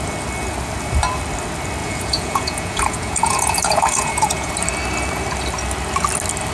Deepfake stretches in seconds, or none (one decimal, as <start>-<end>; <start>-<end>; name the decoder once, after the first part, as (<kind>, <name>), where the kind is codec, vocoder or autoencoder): 1.8-4.5 (vocoder, Vocos)